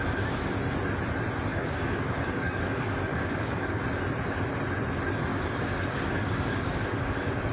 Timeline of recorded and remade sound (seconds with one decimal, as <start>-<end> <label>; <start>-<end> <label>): 0.0-1.5 recorded; 1.5-3.8 remade; 3.8-5.3 recorded; 5.3-7.5 remade